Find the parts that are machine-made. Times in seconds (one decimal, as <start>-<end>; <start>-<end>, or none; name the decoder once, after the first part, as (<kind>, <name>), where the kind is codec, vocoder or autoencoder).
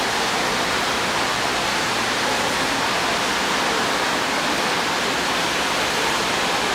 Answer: 3.3-3.8 (vocoder, BigVGAN v2)